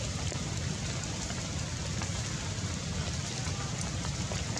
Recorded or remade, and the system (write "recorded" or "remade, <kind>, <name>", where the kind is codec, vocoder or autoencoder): recorded